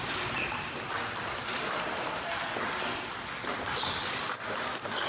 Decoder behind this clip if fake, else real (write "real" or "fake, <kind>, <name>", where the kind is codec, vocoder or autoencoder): fake, vocoder, BigVGAN v2